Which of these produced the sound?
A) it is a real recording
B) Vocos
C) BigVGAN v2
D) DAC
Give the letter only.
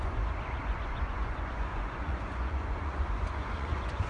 B